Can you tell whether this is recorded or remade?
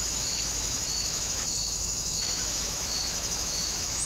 remade